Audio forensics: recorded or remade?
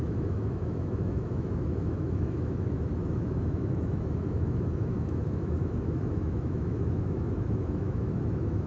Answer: remade